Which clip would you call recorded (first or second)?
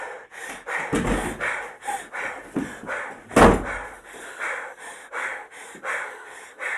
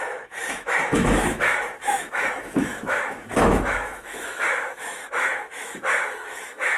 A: first